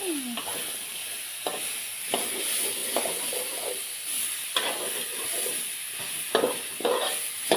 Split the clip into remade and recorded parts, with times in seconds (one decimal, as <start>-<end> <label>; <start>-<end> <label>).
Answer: 0.0-7.6 recorded